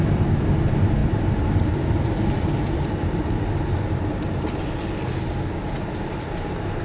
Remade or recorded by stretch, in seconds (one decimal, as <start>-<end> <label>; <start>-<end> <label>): 0.0-1.0 recorded; 1.0-5.1 remade; 5.1-6.8 recorded